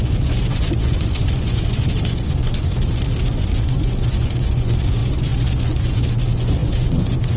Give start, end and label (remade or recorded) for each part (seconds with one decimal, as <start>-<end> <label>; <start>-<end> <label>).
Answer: 0.0-2.7 remade; 2.7-3.2 recorded; 3.2-7.4 remade